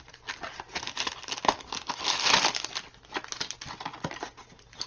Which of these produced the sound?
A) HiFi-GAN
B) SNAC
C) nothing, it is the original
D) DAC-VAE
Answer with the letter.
C